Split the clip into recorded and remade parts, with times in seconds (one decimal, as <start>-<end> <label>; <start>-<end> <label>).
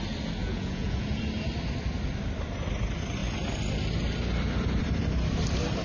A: 0.0-0.4 recorded; 0.4-1.2 remade; 1.2-5.8 recorded